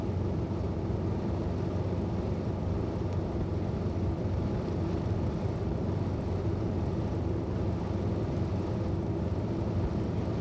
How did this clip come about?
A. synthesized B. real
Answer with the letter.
B